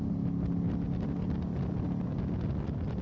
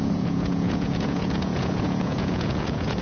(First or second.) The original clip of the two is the first